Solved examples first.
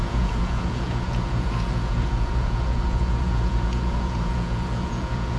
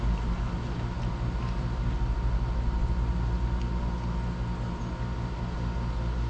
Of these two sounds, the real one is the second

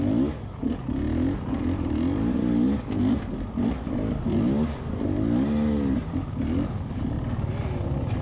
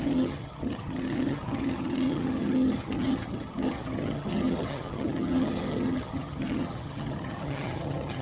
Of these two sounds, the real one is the first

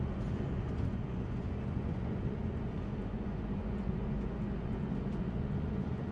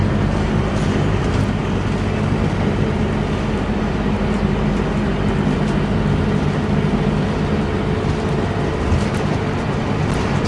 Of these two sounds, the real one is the second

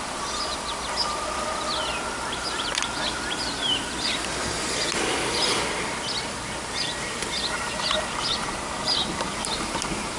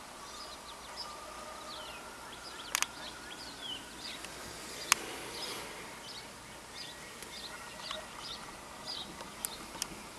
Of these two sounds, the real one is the second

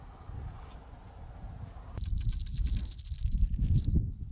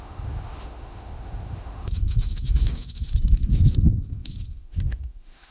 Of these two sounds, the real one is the first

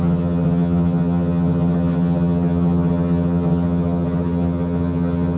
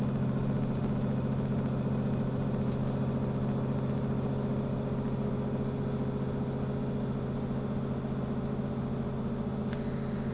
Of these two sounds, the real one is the second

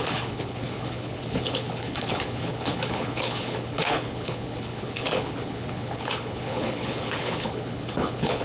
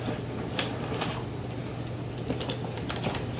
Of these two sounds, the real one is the second